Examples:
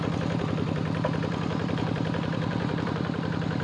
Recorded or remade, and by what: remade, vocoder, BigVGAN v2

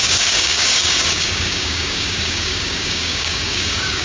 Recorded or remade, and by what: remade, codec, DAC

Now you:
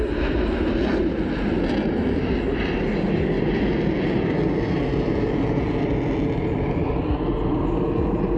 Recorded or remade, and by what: recorded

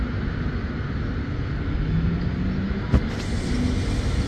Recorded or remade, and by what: recorded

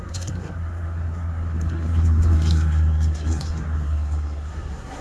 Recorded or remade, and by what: remade, codec, SNAC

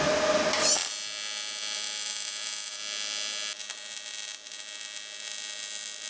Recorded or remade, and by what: recorded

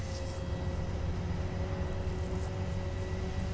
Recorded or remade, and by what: recorded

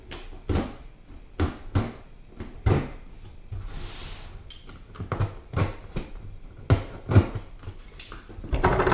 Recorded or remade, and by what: recorded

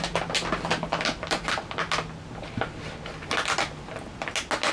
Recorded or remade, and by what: recorded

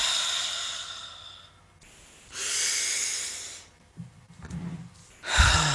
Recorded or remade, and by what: recorded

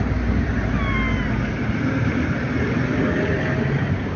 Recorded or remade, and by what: recorded